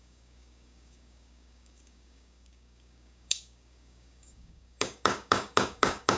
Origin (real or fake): fake